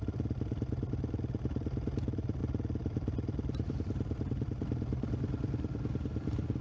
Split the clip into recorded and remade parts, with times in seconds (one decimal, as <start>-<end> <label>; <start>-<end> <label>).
0.0-2.4 recorded; 2.4-6.6 remade